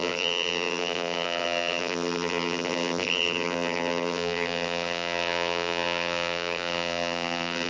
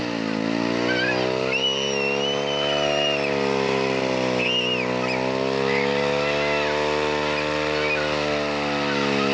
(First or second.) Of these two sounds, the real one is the second